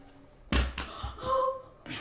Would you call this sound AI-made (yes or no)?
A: no